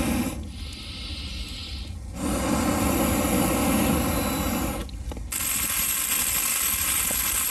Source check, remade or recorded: recorded